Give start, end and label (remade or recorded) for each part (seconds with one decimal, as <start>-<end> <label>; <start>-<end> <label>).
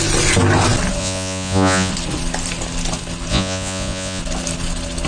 0.0-1.0 recorded; 1.0-1.9 remade; 1.9-3.3 recorded; 3.3-4.2 remade; 4.2-5.1 recorded